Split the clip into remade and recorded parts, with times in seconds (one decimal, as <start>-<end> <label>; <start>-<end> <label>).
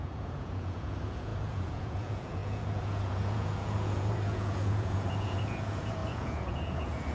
0.0-7.1 remade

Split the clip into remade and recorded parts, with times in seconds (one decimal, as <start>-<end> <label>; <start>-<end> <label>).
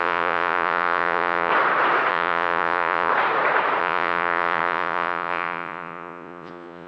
0.0-1.5 remade; 1.5-2.1 recorded; 2.1-3.1 remade; 3.1-3.8 recorded; 3.8-6.9 remade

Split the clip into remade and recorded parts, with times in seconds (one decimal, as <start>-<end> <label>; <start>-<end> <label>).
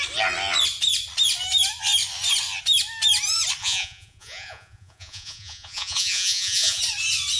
0.0-3.6 recorded; 3.6-6.8 remade; 6.8-7.4 recorded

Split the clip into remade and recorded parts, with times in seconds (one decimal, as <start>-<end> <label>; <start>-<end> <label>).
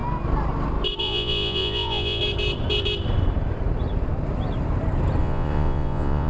0.0-1.0 recorded; 1.0-2.2 remade; 2.2-5.2 recorded; 5.2-6.3 remade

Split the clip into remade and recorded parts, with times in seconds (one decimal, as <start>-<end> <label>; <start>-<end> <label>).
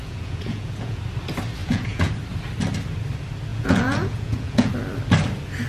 0.0-1.0 remade; 1.0-1.6 recorded; 1.6-2.1 remade; 2.1-3.5 recorded; 3.5-4.7 remade; 4.7-5.7 recorded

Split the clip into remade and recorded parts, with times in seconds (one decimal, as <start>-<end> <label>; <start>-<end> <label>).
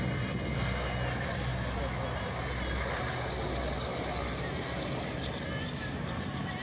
0.0-6.6 recorded